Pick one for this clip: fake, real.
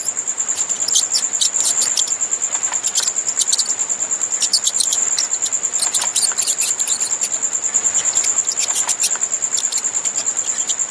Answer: real